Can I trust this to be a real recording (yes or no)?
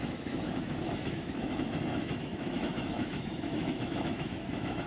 no